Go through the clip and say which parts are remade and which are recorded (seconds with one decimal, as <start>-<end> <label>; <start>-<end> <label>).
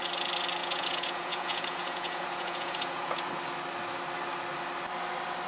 0.0-0.6 recorded; 0.6-3.3 remade; 3.3-5.5 recorded